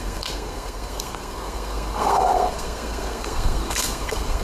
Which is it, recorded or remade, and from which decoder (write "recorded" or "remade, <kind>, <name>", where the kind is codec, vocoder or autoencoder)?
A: remade, codec, SNAC